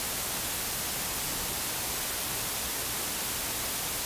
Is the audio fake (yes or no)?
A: no